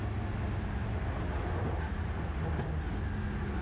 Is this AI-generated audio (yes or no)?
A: no